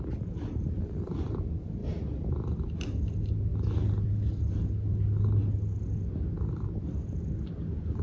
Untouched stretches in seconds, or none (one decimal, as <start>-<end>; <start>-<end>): 0.0-8.0